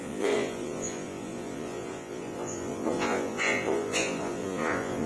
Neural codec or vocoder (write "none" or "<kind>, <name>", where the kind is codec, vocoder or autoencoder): vocoder, Vocos